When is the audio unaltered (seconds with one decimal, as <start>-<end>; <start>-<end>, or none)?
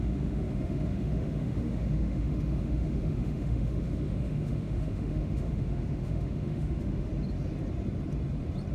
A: 7.1-8.7